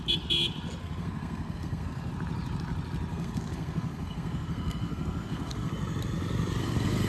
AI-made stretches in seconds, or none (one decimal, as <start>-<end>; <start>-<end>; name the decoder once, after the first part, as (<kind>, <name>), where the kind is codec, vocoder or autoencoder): 0.8-2.1 (codec, SNAC); 3.1-5.7; 6.6-7.1